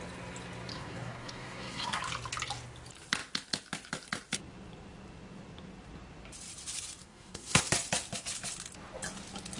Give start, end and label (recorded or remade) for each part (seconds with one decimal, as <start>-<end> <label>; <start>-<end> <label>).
0.0-0.7 recorded; 0.7-2.0 remade; 2.0-7.0 recorded; 7.0-7.6 remade; 7.6-9.6 recorded

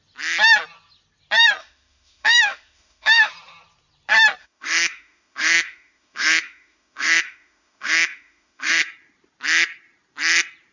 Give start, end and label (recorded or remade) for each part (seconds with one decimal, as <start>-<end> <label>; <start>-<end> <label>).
0.0-1.6 recorded; 1.6-3.3 remade; 3.3-4.4 recorded; 4.4-8.8 remade; 8.8-10.7 recorded

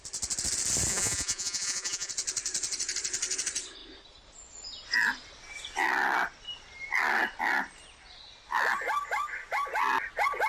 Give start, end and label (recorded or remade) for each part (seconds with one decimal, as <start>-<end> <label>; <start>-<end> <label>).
0.0-0.9 recorded; 0.9-2.1 remade; 2.1-10.5 recorded

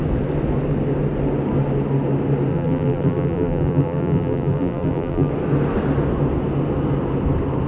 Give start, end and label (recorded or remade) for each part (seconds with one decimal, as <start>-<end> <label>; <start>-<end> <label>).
0.0-2.5 recorded; 2.5-5.3 remade; 5.3-7.7 recorded

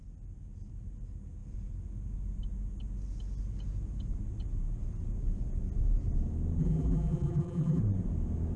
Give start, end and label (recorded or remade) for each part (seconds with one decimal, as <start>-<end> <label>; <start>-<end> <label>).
0.0-6.6 recorded; 6.6-7.8 remade; 7.8-8.6 recorded

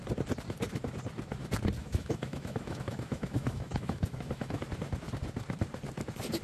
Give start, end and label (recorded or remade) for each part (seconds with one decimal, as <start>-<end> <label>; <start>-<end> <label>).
0.0-1.8 recorded; 1.8-4.6 remade; 4.6-6.4 recorded

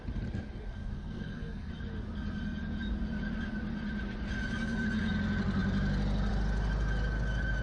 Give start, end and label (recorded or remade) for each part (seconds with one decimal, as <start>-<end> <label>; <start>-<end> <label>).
0.0-0.8 recorded; 0.8-1.7 remade; 1.7-7.6 recorded

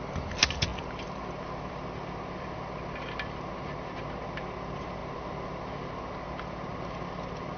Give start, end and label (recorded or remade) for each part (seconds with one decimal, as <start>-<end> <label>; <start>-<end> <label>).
0.0-7.6 recorded